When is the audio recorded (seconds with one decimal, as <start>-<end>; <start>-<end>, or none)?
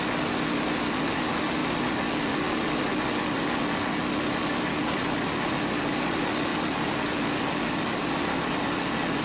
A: 0.0-9.2